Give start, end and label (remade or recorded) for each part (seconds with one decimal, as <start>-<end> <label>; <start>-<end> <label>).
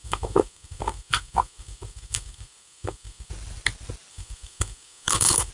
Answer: 0.0-3.3 remade; 3.3-4.1 recorded; 4.1-5.5 remade